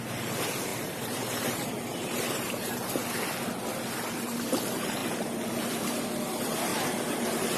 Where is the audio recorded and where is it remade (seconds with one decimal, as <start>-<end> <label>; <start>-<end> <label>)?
0.0-3.0 remade; 3.0-4.2 recorded; 4.2-5.0 remade; 5.0-6.3 recorded; 6.3-7.6 remade